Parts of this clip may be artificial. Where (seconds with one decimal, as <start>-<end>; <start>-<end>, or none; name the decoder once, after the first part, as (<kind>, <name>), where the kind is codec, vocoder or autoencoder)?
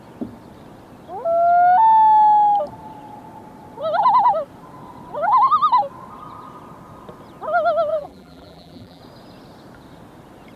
7.9-9.0 (vocoder, BigVGAN v2)